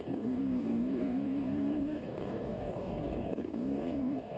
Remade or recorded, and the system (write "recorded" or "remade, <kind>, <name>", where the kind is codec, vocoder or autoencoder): remade, codec, DAC